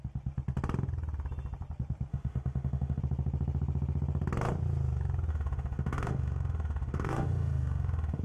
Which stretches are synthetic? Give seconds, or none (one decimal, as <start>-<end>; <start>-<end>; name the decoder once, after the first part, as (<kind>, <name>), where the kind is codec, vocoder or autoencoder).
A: 2.1-3.0 (autoencoder, DAC-VAE); 5.3-8.2